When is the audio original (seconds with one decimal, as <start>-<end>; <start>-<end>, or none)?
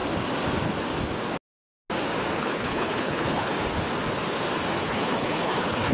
0.0-2.4; 3.5-4.8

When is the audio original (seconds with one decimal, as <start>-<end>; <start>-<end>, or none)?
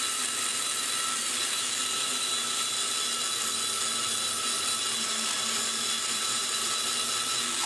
0.0-6.0; 6.7-7.7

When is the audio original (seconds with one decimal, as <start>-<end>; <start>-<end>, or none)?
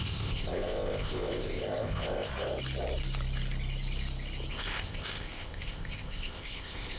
2.3-4.5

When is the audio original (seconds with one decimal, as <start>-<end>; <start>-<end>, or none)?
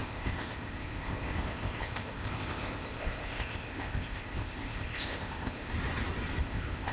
5.7-6.4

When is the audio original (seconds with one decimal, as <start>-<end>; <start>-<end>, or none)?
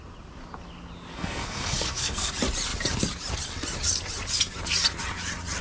0.0-1.1; 2.3-5.6